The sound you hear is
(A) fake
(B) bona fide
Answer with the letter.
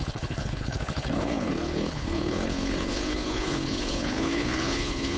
A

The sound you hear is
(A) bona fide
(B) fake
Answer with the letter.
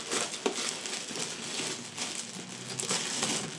A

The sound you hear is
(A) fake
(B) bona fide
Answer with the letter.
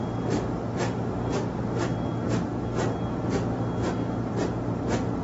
B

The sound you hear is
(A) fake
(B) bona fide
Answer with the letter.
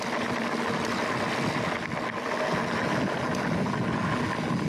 B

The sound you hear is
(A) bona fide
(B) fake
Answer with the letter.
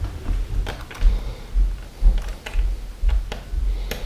A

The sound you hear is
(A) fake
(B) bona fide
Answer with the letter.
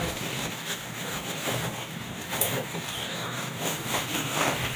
A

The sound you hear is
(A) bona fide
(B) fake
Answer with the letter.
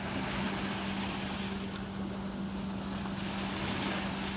A